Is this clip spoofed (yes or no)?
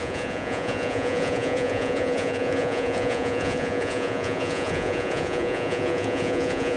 yes